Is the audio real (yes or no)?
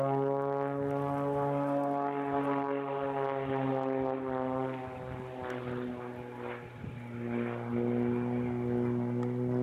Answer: yes